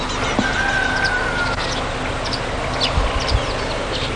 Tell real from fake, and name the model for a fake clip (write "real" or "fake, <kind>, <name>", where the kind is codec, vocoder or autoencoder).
real